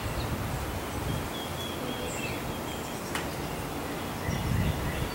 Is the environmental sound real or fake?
real